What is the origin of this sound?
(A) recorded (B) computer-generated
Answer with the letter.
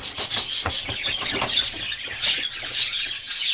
B